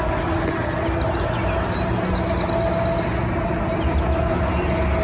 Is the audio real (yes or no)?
yes